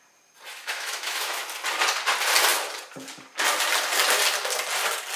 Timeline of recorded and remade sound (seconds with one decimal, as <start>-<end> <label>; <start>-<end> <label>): 0.0-0.5 recorded; 0.5-1.4 remade; 1.4-5.2 recorded